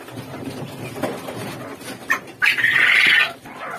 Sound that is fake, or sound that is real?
real